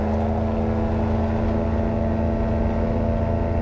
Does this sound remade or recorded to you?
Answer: recorded